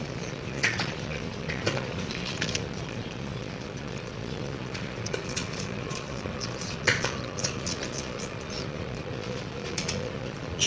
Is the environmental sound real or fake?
fake